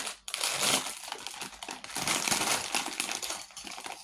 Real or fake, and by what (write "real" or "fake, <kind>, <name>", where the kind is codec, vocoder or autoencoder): real